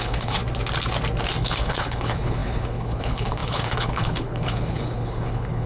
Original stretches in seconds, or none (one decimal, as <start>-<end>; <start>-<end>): 0.4-1.4